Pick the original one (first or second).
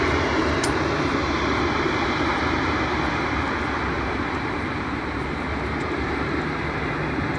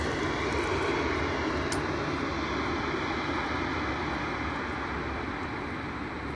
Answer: second